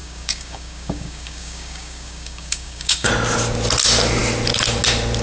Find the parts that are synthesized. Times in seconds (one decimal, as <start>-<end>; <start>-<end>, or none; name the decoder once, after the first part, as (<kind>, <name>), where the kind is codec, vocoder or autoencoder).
0.0-3.1 (codec, DAC)